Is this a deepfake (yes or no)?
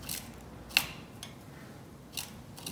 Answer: no